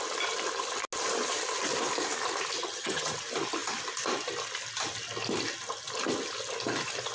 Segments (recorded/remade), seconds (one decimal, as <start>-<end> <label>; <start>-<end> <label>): 0.0-2.6 recorded; 2.6-3.1 remade; 3.1-7.1 recorded